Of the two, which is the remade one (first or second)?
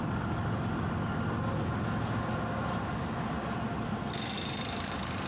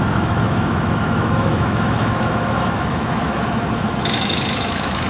second